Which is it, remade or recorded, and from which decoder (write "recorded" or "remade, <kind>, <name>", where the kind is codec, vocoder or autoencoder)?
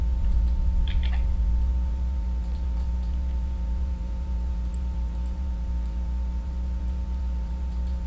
remade, vocoder, BigVGAN v2